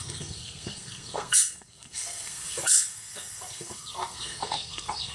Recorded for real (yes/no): no